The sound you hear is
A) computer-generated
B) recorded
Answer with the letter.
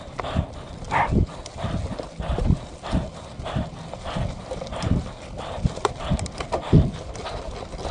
B